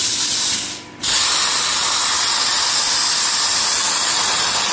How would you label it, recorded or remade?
recorded